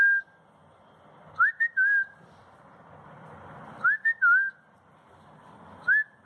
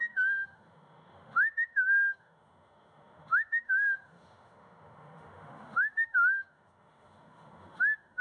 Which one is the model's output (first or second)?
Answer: second